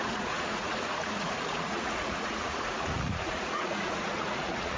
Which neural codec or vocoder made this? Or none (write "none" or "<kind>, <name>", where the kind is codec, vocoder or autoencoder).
vocoder, Vocos